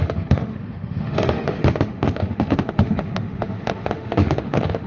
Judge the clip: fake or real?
fake